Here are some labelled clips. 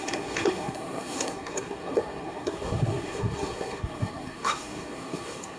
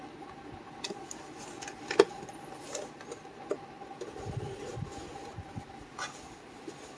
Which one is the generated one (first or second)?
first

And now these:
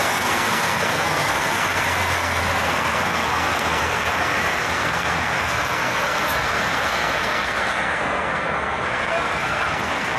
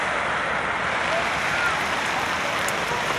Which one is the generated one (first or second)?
first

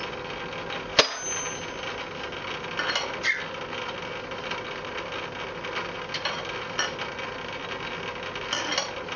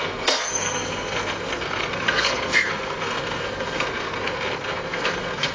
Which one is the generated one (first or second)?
second